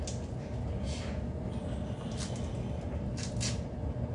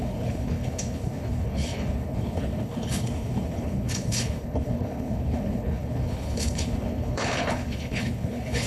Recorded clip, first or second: first